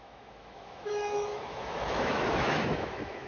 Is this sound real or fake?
fake